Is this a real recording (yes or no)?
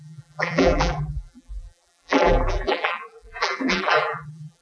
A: no